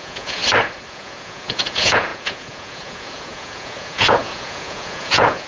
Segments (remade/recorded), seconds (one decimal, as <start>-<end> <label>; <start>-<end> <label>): 0.0-0.4 remade; 0.4-0.9 recorded; 0.9-5.5 remade